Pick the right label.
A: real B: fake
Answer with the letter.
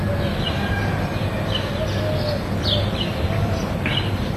A